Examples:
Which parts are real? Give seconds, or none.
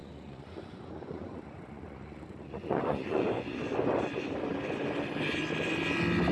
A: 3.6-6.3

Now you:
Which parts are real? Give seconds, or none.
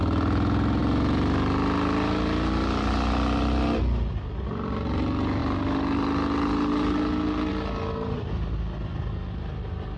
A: 0.0-10.0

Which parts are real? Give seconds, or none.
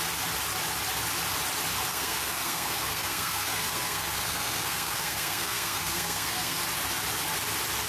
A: 0.0-1.9; 6.6-7.9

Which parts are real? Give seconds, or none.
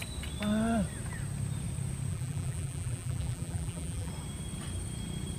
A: 0.0-2.1; 4.1-5.4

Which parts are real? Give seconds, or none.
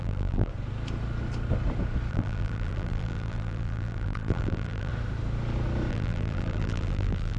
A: 0.5-2.1; 4.9-5.9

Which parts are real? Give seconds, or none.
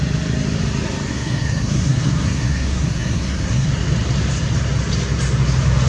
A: 0.0-1.1; 3.7-5.9